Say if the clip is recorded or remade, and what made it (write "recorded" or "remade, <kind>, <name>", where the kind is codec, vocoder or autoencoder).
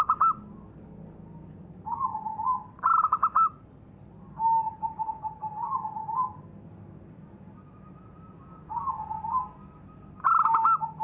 recorded